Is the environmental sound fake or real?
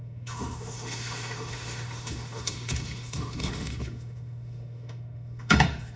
fake